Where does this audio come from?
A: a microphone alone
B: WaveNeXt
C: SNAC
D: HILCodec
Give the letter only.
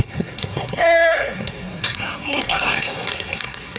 C